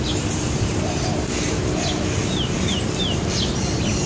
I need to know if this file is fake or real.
real